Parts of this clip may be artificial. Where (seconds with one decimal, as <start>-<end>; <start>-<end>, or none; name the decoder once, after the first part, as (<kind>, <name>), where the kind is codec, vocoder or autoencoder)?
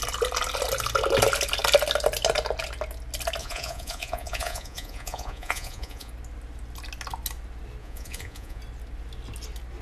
3.4-6.1 (vocoder, Vocos); 7.8-8.6